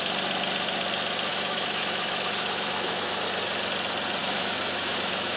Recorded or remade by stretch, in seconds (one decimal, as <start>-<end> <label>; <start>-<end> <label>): 0.0-1.3 recorded; 1.3-3.2 remade; 3.2-4.2 recorded; 4.2-5.4 remade